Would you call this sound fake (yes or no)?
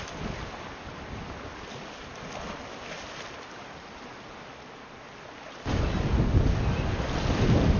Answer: no